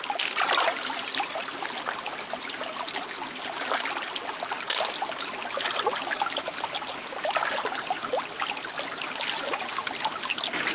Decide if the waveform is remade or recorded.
recorded